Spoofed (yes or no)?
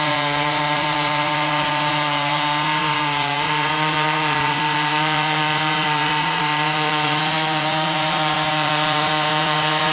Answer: yes